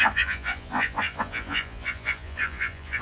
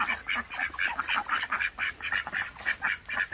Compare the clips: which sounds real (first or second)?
second